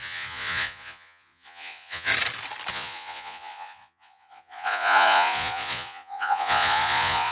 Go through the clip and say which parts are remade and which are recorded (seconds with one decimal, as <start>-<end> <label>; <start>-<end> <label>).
0.0-2.1 remade; 2.1-2.7 recorded; 2.7-7.3 remade